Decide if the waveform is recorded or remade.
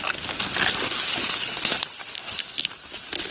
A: recorded